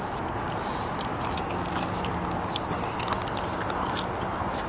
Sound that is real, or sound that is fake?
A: real